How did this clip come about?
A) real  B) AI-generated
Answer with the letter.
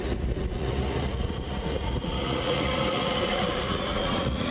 B